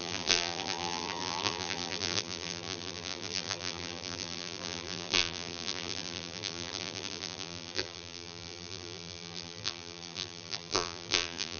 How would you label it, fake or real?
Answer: fake